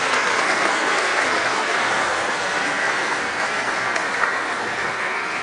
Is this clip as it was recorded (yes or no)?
no